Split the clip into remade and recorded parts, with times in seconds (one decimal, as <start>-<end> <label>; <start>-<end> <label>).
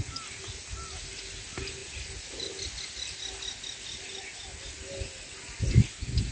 0.0-6.3 recorded